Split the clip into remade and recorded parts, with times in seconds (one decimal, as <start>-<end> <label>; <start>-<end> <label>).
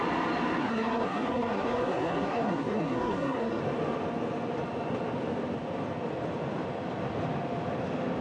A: 0.0-0.6 recorded; 0.6-3.6 remade; 3.6-8.2 recorded